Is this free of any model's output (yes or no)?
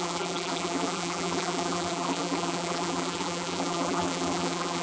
no